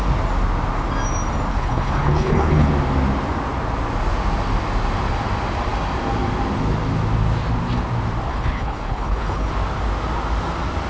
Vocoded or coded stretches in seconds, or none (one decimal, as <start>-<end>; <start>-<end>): 1.5-2.7; 8.3-9.5

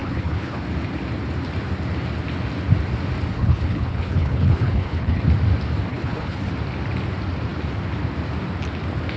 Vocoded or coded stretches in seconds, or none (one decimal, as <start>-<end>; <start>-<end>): 0.0-0.6; 3.3-5.2; 5.9-6.5

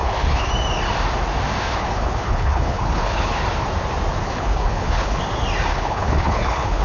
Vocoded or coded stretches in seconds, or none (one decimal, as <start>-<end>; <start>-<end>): 0.0-0.5; 1.6-3.4; 4.2-5.2; 5.7-6.8

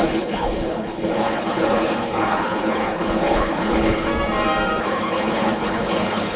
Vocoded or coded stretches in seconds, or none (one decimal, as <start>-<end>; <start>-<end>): 0.0-4.1; 4.8-6.4

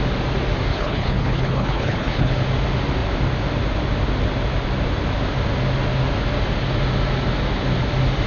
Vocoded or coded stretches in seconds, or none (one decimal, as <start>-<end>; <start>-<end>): 0.7-2.3

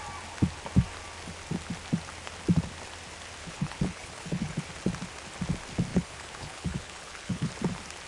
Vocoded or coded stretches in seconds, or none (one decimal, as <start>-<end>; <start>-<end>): 3.4-4.7; 5.9-7.5

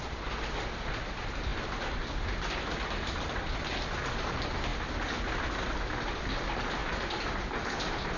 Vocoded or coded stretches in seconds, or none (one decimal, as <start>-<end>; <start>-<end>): none

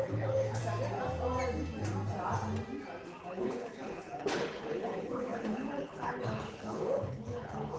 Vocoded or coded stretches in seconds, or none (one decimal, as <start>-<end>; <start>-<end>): 0.0-0.6; 3.2-7.8